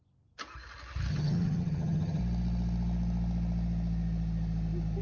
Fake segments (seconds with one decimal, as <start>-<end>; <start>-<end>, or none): 1.1-2.2